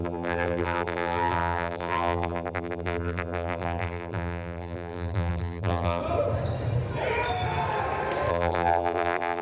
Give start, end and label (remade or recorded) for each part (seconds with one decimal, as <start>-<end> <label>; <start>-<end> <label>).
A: 0.0-6.0 remade; 6.0-8.3 recorded; 8.3-9.4 remade